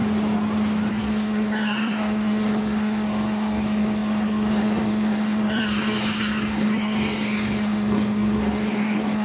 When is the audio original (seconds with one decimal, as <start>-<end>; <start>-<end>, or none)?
0.0-0.9